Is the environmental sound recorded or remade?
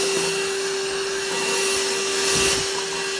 recorded